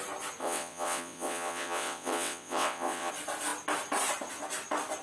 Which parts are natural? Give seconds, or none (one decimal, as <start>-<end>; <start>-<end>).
0.0-0.4; 3.1-5.0